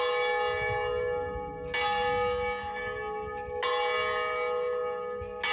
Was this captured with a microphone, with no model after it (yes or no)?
yes